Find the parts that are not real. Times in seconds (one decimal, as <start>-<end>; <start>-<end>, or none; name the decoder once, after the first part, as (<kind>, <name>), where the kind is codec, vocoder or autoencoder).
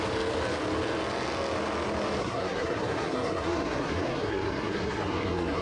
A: 2.2-5.6 (codec, SNAC)